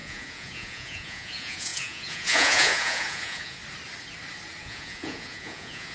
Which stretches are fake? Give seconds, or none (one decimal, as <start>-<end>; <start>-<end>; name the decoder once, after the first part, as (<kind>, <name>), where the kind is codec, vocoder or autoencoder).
0.0-3.6 (vocoder, Vocos); 4.6-5.9